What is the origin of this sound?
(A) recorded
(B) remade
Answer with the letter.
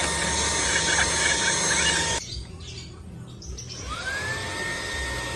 A